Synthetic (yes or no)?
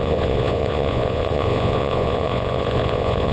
yes